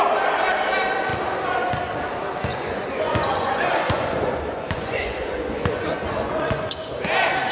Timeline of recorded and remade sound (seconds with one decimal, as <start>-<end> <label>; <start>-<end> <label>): 0.0-2.5 recorded; 2.5-7.0 remade; 7.0-7.5 recorded